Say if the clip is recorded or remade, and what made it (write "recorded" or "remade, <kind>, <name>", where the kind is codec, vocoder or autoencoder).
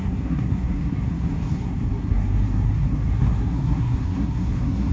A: remade, codec, SNAC